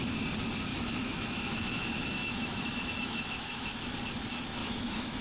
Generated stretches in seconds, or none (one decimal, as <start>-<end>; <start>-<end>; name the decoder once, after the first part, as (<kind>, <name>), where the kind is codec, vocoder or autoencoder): 0.7-3.8 (autoencoder, DAC-VAE); 4.6-5.2